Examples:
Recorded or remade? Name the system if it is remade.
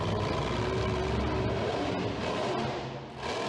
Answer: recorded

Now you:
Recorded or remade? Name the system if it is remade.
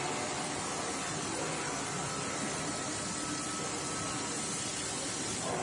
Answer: recorded